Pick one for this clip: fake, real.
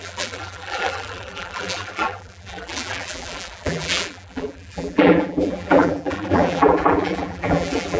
fake